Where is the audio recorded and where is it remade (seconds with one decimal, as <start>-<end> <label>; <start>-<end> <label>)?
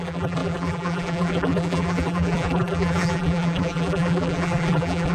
0.0-5.1 remade